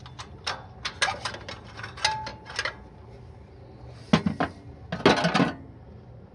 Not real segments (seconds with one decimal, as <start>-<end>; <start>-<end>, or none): none